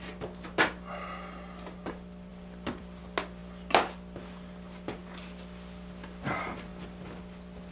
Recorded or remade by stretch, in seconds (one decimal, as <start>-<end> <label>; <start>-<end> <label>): 0.0-2.3 recorded; 2.3-3.0 remade; 3.0-7.7 recorded